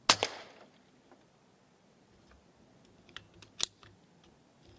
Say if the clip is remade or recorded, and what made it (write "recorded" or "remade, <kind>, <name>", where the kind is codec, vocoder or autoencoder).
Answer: recorded